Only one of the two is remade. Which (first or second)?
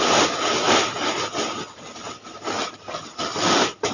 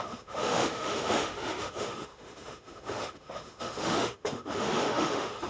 second